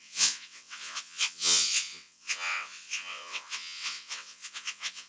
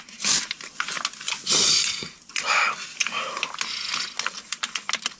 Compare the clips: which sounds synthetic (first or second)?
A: first